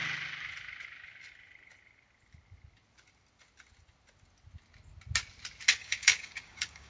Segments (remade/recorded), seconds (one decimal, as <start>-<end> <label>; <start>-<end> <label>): 0.0-5.8 recorded; 5.8-6.9 remade